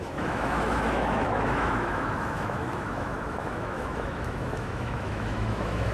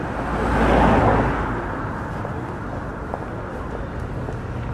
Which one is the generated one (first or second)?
first